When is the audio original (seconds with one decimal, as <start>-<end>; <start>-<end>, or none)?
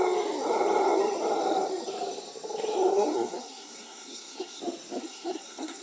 0.0-2.9; 4.6-5.0